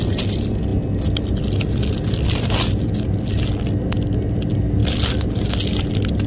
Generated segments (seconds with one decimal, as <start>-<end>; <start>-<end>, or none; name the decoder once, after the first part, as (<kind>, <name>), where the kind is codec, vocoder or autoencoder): none